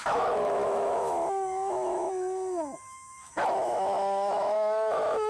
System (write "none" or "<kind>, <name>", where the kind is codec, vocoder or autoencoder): autoencoder, DAC-VAE